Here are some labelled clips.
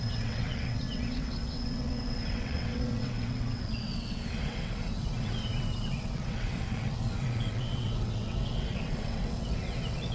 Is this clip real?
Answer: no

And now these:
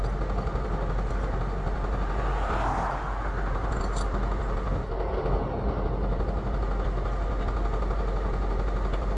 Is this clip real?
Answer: yes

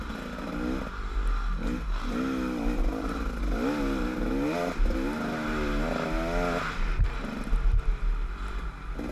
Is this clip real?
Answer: yes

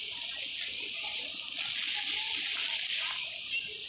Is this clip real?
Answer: yes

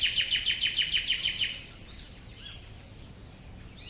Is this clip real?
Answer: yes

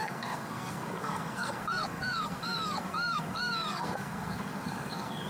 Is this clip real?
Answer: no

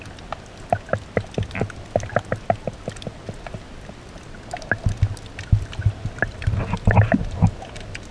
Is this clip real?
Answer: yes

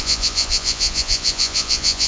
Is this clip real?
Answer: no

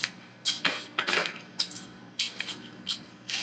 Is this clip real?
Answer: no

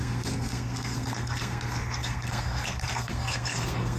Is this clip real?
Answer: no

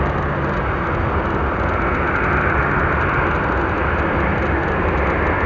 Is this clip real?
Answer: yes